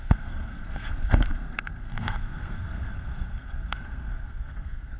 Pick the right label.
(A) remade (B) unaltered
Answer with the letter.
A